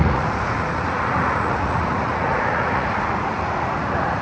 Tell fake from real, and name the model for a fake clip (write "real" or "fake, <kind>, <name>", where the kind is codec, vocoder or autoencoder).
fake, vocoder, Vocos